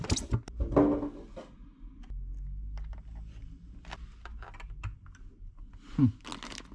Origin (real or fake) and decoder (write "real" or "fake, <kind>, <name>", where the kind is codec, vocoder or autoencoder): real